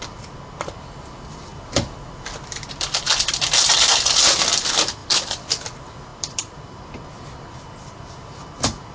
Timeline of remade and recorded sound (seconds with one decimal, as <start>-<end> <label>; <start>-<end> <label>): 0.0-5.0 recorded; 5.0-5.6 remade; 5.6-6.1 recorded; 6.1-6.8 remade; 6.8-8.9 recorded